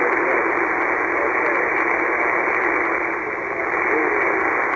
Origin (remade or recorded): recorded